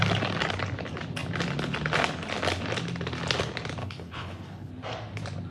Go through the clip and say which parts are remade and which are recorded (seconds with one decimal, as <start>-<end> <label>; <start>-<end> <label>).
0.0-3.8 recorded; 3.8-4.7 remade; 4.7-5.5 recorded